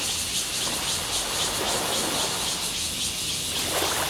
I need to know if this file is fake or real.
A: real